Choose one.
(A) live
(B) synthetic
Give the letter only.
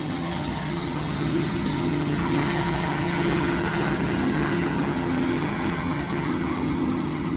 B